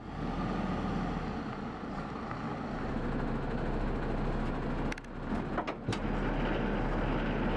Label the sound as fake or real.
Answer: real